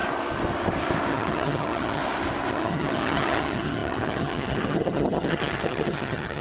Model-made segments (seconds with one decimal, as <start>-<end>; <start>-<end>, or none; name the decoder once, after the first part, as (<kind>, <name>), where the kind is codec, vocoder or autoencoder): 1.1-2.0 (vocoder, HiFi-GAN); 2.5-6.4

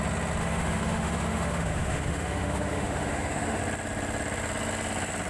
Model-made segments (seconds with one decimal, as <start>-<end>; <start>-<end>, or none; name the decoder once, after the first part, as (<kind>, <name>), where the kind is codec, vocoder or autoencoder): 0.4-3.6 (autoencoder, DAC-VAE)

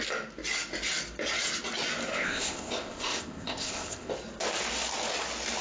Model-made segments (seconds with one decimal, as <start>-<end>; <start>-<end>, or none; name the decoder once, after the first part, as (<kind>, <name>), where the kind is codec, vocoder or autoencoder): 2.1-4.1 (codec, ZipCodec)

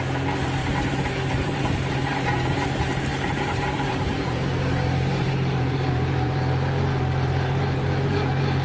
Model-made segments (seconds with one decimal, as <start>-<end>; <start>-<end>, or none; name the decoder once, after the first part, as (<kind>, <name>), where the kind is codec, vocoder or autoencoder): 0.6-1.9 (vocoder, BigVGAN v2); 3.1-6.4

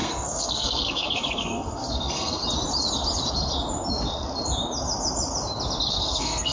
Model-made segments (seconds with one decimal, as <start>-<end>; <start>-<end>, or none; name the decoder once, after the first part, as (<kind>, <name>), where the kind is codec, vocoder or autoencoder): 0.0-2.4 (codec, SNAC); 5.9-6.5

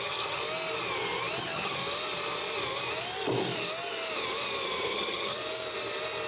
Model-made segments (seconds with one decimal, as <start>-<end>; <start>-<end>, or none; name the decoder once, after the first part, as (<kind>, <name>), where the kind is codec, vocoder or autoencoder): 0.0-0.4 (vocoder, HiFi-GAN); 1.4-1.8; 4.8-5.4